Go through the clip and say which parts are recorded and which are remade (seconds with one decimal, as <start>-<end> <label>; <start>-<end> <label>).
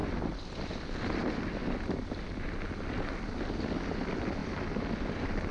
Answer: 0.0-4.4 recorded; 4.4-5.5 remade